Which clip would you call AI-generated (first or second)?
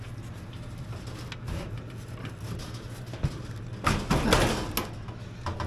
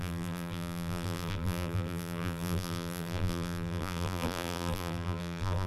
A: second